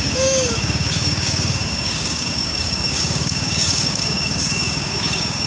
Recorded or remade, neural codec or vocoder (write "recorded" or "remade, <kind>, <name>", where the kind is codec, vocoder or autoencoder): remade, codec, DAC